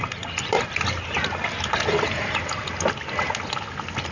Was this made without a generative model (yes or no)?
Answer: yes